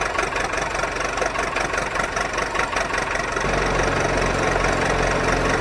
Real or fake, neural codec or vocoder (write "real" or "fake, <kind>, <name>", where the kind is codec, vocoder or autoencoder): real